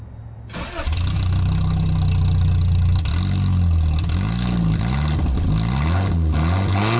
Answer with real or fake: real